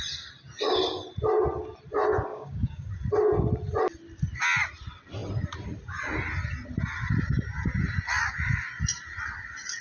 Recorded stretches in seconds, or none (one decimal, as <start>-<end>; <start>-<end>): 0.0-2.3; 2.9-9.8